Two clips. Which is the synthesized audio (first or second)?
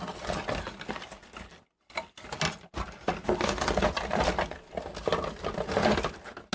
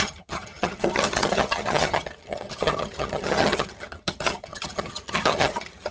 second